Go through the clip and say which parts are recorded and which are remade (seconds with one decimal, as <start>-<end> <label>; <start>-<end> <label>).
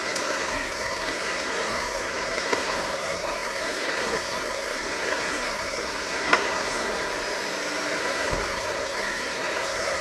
0.0-7.1 remade; 7.1-8.0 recorded; 8.0-10.0 remade